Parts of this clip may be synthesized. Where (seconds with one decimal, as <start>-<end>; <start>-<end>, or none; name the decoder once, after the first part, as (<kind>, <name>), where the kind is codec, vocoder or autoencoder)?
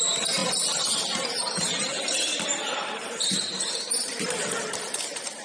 0.0-5.4 (vocoder, BigVGAN v2)